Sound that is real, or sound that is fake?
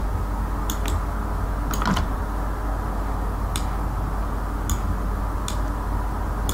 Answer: real